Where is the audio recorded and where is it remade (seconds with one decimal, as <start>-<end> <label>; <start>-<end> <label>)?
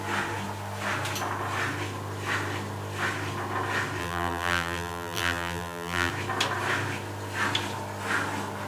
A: 0.0-4.0 recorded; 4.0-6.1 remade; 6.1-8.7 recorded